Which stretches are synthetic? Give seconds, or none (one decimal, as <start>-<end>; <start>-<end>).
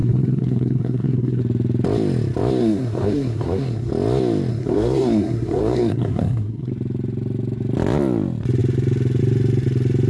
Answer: 0.0-1.4; 2.6-3.9; 4.5-6.7